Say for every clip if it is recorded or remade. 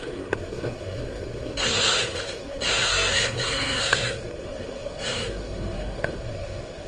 remade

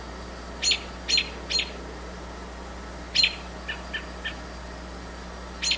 recorded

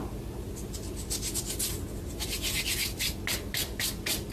recorded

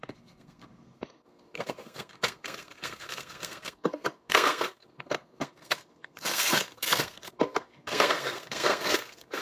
remade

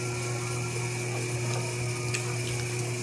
recorded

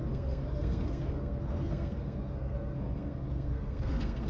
remade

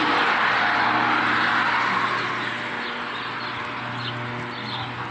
recorded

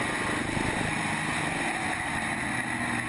recorded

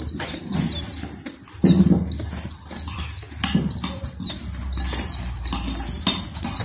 recorded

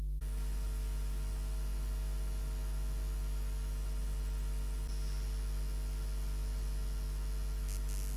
recorded